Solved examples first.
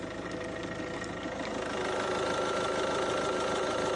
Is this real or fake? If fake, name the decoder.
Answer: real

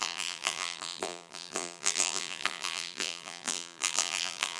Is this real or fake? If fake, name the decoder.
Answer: fake, vocoder, BigVGAN v2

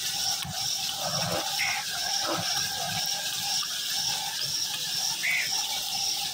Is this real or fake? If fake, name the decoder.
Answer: real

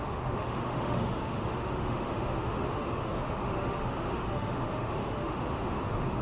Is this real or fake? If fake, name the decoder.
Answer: fake, autoencoder, DAC-VAE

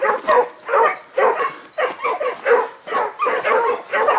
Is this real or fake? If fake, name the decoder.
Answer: real